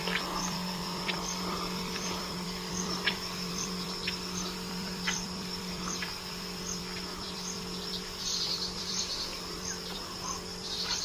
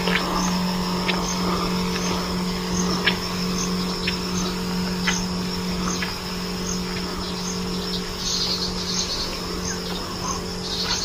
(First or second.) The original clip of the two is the second